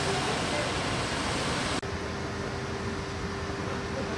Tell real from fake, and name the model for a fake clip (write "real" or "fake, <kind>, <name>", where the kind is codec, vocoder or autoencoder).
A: real